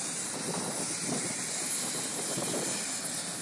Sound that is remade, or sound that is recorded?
recorded